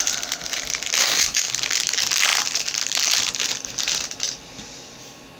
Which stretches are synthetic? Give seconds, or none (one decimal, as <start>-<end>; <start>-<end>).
1.0-1.5

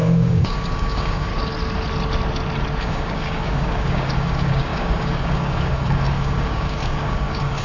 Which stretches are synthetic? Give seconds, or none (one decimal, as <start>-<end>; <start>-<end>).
0.0-1.3; 2.8-7.6